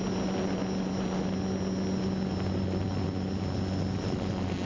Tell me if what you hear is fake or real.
real